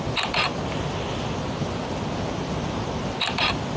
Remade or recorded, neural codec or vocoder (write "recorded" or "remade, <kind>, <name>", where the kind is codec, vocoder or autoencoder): recorded